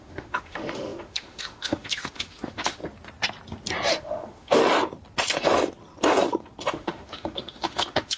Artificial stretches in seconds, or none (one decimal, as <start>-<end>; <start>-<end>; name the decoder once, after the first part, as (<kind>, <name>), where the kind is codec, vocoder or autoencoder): 0.0-2.8 (autoencoder, DAC-VAE); 3.9-4.6; 6.7-8.2